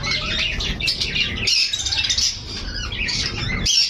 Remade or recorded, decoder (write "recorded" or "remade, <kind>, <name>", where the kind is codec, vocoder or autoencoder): recorded